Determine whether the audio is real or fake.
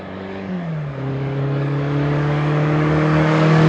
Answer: fake